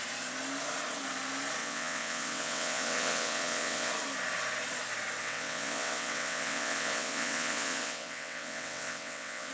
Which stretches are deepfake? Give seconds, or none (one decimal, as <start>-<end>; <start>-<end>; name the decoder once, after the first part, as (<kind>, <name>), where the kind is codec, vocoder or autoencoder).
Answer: 1.6-3.9 (vocoder, WaveNeXt); 5.2-9.5